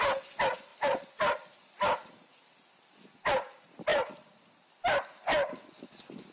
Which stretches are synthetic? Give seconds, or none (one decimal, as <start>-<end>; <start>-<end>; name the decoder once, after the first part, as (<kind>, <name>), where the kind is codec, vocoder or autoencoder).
0.7-2.2 (vocoder, BigVGAN v2)